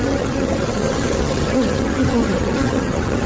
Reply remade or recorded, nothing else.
remade